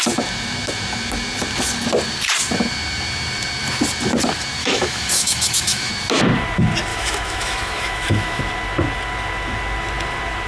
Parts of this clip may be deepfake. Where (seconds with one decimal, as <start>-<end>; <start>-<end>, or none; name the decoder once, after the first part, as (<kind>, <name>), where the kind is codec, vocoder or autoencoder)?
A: 4.6-5.9 (autoencoder, DAC-VAE); 6.9-8.4